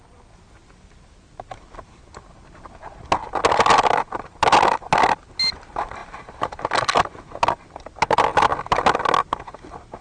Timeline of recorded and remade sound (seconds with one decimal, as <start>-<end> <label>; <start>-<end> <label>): 0.0-6.0 recorded; 6.0-6.5 remade; 6.5-10.0 recorded